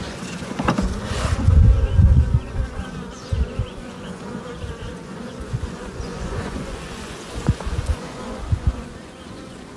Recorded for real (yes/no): no